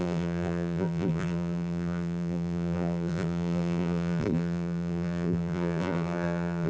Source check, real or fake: fake